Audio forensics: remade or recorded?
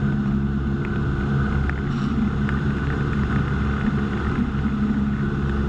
recorded